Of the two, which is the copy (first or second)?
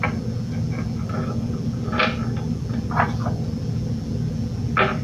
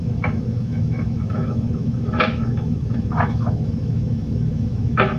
second